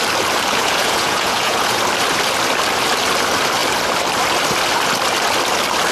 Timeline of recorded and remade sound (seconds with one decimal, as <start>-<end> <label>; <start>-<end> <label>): 0.0-0.6 recorded; 0.6-1.8 remade; 1.8-5.9 recorded